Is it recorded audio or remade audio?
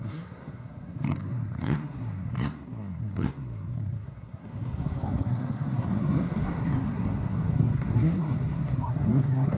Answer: remade